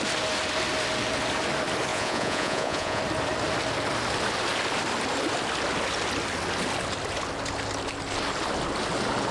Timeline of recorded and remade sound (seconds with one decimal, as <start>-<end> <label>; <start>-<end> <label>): 0.0-1.9 recorded; 1.9-3.0 remade; 3.0-9.3 recorded